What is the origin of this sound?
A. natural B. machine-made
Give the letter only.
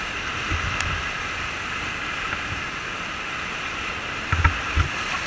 A